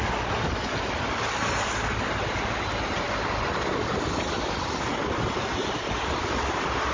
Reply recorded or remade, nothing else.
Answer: recorded